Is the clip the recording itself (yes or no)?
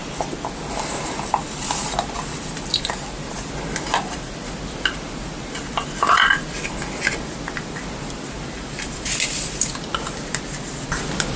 yes